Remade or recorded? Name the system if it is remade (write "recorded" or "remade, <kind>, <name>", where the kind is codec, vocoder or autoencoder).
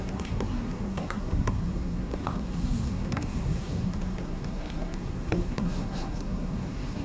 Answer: remade, codec, SNAC